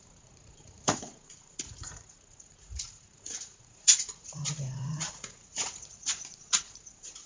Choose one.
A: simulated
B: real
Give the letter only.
A